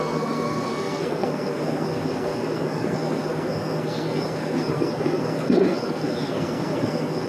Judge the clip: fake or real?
fake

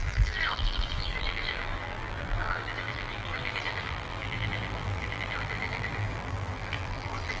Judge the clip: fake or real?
fake